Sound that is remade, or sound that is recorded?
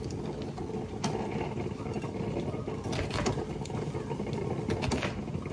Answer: recorded